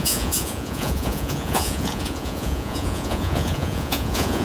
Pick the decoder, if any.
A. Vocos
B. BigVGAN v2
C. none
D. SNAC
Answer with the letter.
A